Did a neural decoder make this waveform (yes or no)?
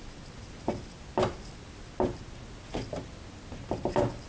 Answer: no